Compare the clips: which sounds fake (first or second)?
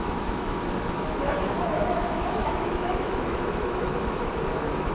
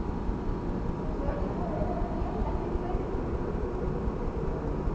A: first